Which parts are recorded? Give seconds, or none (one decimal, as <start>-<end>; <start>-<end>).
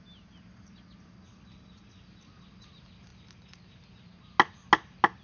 0.0-5.2